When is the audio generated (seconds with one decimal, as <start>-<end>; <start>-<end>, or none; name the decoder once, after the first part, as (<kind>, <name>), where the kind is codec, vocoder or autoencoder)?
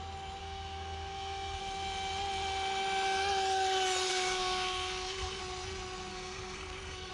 0.4-1.6 (codec, SNAC); 4.1-5.4; 6.1-7.1